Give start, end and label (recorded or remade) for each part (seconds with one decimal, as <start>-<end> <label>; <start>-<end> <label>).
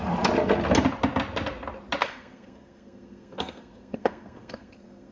0.0-2.0 recorded; 2.0-5.1 remade